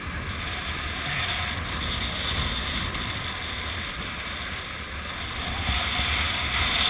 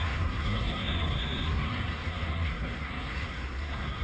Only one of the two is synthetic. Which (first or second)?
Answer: second